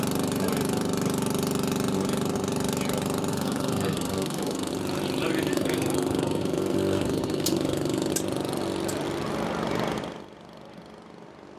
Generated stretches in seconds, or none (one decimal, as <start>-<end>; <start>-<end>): 3.3-4.7; 5.5-8.1